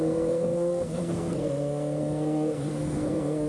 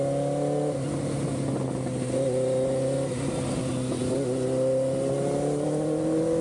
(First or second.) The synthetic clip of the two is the first